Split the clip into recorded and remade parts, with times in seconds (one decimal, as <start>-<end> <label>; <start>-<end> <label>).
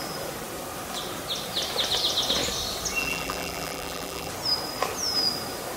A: 0.0-3.0 recorded; 3.0-4.3 remade; 4.3-5.8 recorded